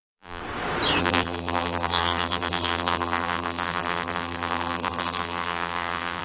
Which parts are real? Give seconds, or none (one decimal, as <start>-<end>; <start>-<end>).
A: 0.4-1.0